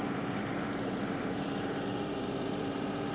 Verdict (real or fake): fake